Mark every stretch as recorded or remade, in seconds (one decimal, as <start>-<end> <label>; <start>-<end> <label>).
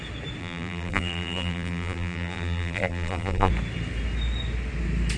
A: 0.0-0.4 recorded; 0.4-3.5 remade; 3.5-5.2 recorded